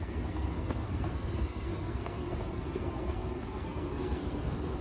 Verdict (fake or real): fake